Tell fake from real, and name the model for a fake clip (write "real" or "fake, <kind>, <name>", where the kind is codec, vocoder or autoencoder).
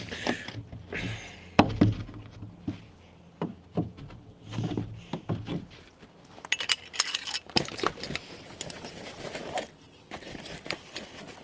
real